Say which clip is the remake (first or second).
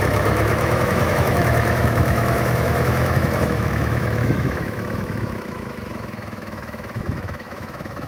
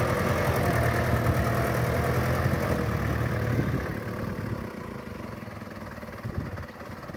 first